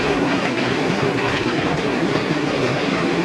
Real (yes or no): no